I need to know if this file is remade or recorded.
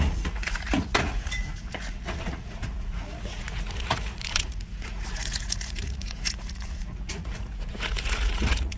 remade